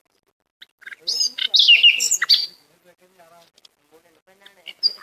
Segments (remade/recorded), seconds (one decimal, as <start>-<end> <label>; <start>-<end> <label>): 0.0-5.0 recorded

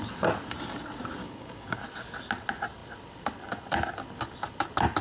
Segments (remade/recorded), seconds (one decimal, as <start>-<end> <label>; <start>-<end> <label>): 0.0-1.2 recorded; 1.2-1.8 remade; 1.8-5.0 recorded